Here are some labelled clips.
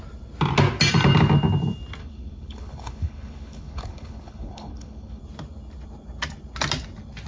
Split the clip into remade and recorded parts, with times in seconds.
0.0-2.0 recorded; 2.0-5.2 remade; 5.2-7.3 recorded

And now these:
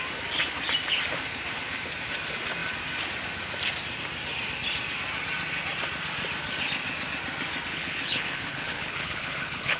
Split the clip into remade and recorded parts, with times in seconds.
0.0-7.7 recorded; 7.7-9.8 remade